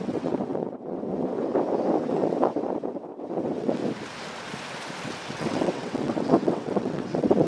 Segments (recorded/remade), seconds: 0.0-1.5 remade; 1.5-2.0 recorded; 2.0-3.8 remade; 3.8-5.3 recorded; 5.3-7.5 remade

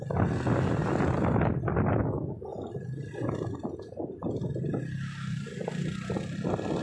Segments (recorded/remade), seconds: 0.0-6.8 recorded

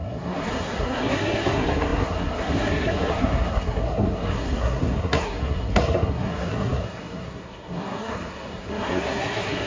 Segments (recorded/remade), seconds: 0.0-9.7 remade